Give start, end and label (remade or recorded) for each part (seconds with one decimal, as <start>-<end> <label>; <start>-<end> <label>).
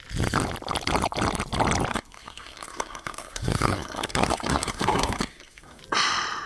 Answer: 0.0-1.9 recorded; 1.9-5.8 remade; 5.8-6.5 recorded